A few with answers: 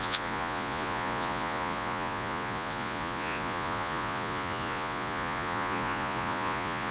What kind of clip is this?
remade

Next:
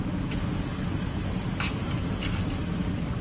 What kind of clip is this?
recorded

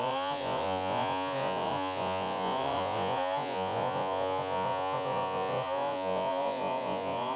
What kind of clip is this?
remade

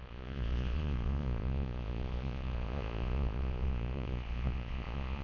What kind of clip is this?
remade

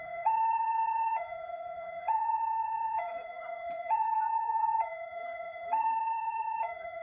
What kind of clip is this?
remade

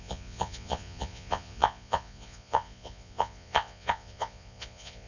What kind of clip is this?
remade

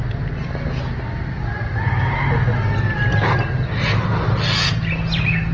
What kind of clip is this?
recorded